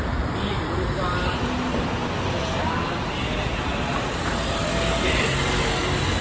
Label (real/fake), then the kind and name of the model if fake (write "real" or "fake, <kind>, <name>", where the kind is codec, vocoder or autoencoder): real